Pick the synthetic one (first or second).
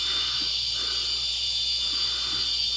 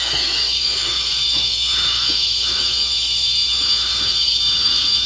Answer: second